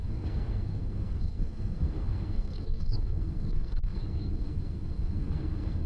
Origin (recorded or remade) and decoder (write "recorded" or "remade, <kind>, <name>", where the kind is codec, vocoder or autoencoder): remade, codec, SNAC